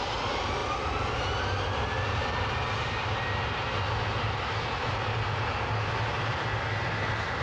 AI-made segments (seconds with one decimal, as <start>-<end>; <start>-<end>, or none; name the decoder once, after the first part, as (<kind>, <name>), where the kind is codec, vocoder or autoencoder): none

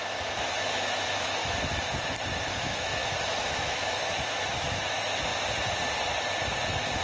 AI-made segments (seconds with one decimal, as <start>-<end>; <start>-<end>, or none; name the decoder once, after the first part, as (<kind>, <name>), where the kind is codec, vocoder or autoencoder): 0.0-1.4 (autoencoder, DAC-VAE); 2.4-5.3; 6.6-7.0

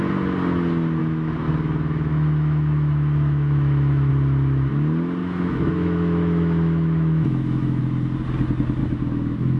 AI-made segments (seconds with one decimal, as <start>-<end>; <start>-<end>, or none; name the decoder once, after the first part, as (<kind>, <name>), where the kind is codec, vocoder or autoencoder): 1.0-4.1 (autoencoder, DAC-VAE); 5.2-7.8; 8.8-9.6

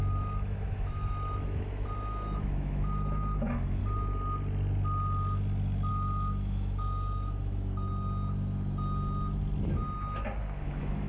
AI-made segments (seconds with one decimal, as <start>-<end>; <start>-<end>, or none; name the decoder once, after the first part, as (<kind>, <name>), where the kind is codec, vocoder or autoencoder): 0.0-3.8 (autoencoder, DAC-VAE); 5.9-7.9; 10.6-11.1

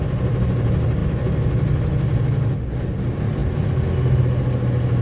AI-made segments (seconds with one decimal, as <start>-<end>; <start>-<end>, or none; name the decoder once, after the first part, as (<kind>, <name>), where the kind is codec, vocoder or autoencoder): none

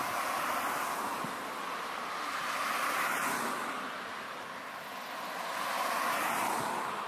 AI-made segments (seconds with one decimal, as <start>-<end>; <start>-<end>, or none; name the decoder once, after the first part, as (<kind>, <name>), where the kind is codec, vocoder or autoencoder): none

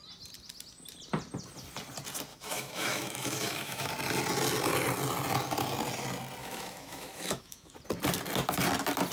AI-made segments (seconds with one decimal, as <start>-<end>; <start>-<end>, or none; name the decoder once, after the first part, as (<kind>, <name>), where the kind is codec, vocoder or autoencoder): 2.3-3.9 (autoencoder, DAC-VAE); 6.4-7.7

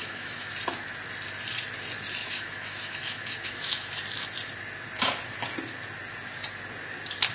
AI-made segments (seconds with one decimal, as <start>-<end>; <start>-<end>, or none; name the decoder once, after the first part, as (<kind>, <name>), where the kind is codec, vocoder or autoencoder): 0.0-0.5 (autoencoder, DAC-VAE); 2.2-3.9